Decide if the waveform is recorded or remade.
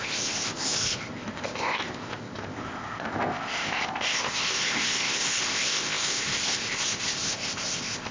remade